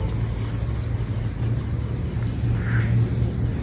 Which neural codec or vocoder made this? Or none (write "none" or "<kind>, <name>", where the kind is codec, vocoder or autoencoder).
none